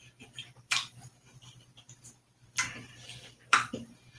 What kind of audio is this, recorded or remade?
remade